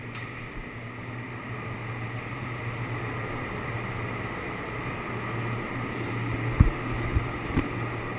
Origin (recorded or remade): recorded